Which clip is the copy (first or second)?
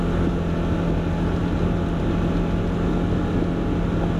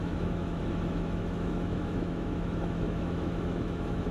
second